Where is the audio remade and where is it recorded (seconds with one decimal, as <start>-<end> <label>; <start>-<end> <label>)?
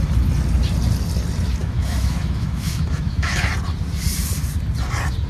0.0-1.6 recorded; 1.6-3.5 remade; 3.5-5.3 recorded